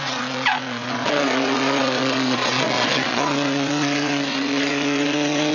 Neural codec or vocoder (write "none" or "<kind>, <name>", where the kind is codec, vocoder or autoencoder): vocoder, WaveNeXt